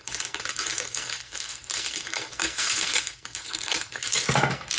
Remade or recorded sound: remade